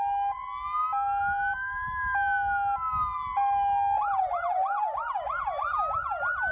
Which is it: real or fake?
real